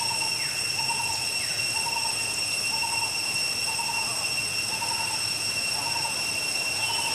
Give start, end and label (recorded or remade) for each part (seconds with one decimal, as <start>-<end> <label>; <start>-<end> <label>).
0.0-7.1 recorded